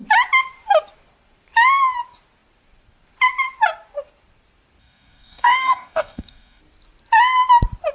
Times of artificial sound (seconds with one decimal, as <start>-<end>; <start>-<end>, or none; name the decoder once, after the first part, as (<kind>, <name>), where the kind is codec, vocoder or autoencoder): 4.8-6.6 (codec, DAC)